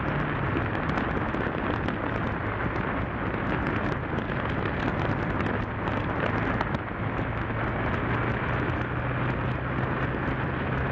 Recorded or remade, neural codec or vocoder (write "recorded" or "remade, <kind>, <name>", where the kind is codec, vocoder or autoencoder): recorded